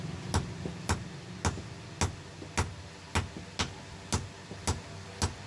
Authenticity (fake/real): real